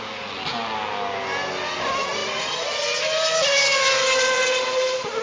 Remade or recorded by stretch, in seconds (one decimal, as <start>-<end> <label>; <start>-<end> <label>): 0.0-5.2 recorded